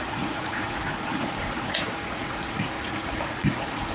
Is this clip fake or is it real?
fake